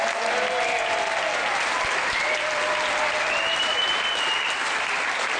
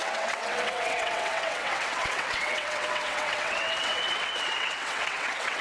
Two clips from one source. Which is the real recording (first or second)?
first